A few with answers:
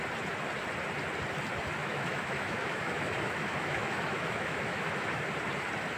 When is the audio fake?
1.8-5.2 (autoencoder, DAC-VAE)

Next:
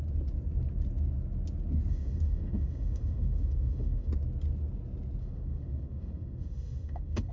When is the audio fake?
1.9-4.1 (autoencoder, DAC-VAE); 5.2-7.3

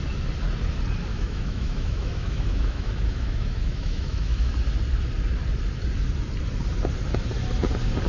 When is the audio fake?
1.1-4.5 (autoencoder, DAC-VAE)

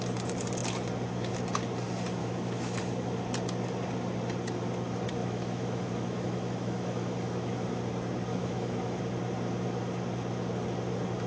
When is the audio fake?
2.2-2.8 (autoencoder, DAC-VAE); 5.2-7.8; 8.3-9.0

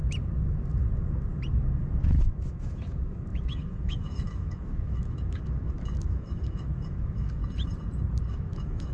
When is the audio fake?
2.2-7.4 (autoencoder, DAC-VAE); 8.3-8.9